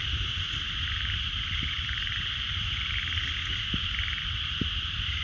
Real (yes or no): yes